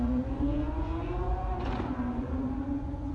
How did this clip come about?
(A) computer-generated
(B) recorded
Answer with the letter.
A